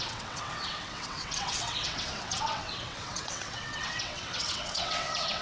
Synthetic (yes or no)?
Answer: yes